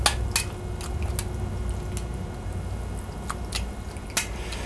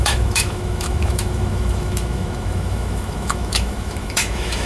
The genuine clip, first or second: first